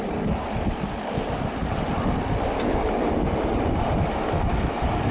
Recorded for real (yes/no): yes